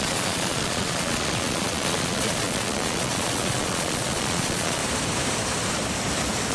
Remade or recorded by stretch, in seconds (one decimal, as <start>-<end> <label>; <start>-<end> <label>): 0.0-4.8 remade; 4.8-6.5 recorded